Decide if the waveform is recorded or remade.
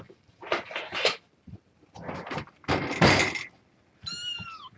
recorded